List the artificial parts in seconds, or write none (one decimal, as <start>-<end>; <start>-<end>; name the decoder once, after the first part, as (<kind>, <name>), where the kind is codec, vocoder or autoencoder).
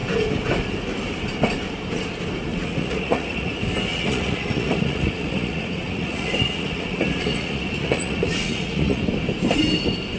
2.5-3.5 (vocoder, Vocos); 3.9-9.0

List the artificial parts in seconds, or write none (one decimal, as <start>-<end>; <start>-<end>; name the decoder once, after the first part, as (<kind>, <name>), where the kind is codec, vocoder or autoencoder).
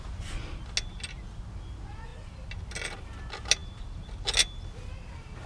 none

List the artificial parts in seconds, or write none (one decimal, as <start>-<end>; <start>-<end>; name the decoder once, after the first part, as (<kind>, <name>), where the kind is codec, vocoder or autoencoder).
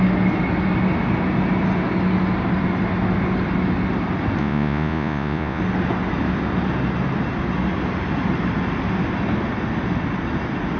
4.4-5.6 (vocoder, Vocos)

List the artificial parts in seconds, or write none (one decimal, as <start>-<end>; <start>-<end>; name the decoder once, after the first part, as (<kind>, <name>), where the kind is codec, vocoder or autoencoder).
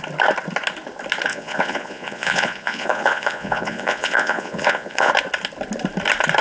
1.3-5.1 (vocoder, Vocos)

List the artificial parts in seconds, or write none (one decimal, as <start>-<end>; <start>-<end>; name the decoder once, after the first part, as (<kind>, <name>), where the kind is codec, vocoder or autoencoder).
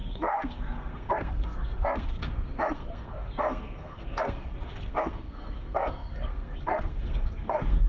0.0-7.9 (codec, SNAC)